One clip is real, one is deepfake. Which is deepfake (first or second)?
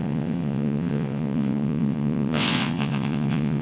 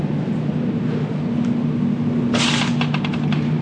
first